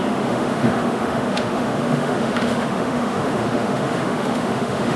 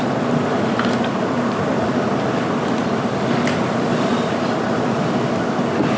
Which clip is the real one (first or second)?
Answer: second